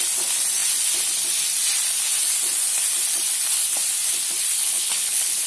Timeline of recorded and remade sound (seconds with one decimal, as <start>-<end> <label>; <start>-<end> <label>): 0.0-4.6 recorded; 4.6-5.5 remade